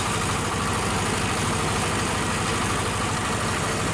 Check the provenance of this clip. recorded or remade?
remade